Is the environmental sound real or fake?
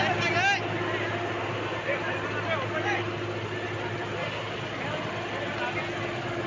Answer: real